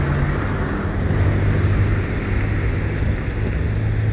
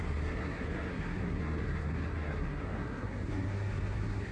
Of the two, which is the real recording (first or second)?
first